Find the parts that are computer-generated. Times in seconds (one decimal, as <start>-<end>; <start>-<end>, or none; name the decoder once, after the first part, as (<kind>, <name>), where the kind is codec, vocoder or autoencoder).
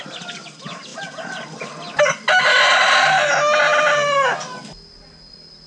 none